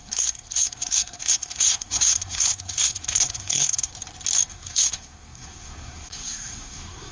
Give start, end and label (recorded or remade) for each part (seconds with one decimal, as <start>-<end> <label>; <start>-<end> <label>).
0.0-3.9 remade; 3.9-4.5 recorded; 4.5-7.1 remade